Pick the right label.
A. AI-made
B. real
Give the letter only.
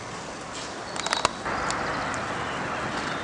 B